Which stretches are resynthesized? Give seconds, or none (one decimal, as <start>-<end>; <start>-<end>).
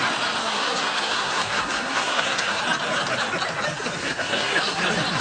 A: 0.4-2.6; 4.0-4.8